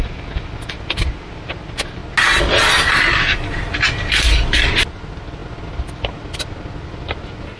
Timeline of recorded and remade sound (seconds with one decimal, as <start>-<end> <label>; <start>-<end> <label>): 0.0-7.6 recorded